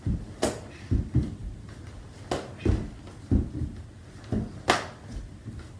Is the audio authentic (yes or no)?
yes